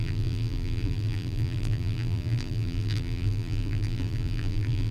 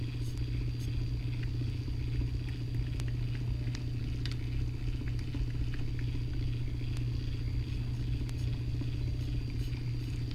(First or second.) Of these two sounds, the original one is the second